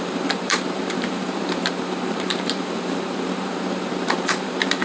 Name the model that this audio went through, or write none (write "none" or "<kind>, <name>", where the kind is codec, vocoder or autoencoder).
vocoder, BigVGAN v2